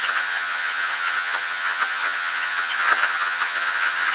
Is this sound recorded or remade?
remade